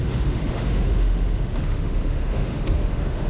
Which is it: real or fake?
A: fake